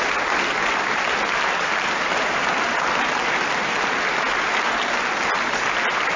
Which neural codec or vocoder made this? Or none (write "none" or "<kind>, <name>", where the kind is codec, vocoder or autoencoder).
none